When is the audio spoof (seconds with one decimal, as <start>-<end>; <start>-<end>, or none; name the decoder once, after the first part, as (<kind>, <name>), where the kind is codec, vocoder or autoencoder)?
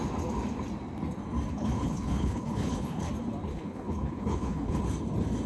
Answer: 1.5-3.1 (codec, HILCodec); 3.5-4.8